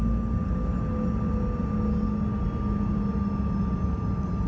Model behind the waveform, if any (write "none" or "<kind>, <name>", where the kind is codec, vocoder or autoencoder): none